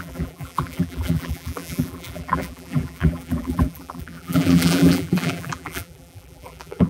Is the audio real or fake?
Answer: fake